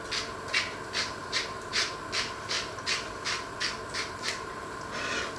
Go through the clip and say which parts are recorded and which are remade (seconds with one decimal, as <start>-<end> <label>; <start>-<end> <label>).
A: 0.0-1.2 recorded; 1.2-1.9 remade; 1.9-4.0 recorded; 4.0-4.6 remade; 4.6-5.4 recorded